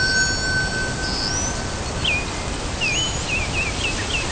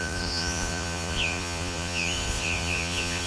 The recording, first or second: first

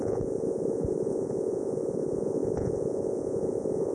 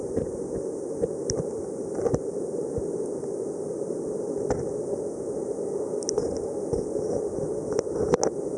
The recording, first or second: second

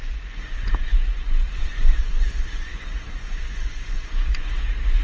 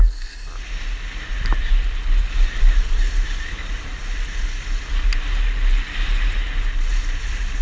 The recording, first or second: second